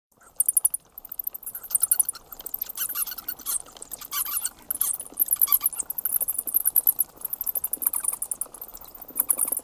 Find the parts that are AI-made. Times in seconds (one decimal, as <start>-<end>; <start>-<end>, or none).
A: none